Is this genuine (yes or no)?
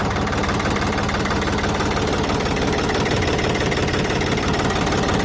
yes